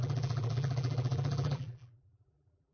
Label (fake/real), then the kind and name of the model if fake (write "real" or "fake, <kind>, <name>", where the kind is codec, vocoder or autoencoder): fake, vocoder, BigVGAN v2